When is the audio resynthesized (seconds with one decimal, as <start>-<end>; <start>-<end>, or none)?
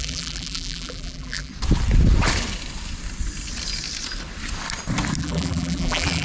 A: 0.0-1.5; 5.2-6.2